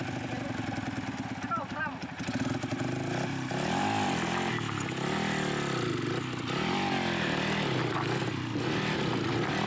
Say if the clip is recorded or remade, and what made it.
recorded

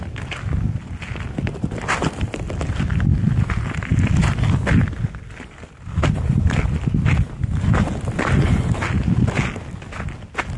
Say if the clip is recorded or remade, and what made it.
recorded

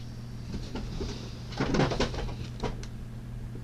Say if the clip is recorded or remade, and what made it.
recorded